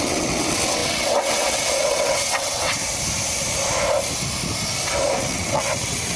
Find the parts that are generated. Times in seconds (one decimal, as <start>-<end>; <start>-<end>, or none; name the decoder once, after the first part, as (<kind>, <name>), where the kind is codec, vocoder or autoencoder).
0.0-2.8 (vocoder, WaveNeXt); 5.2-6.2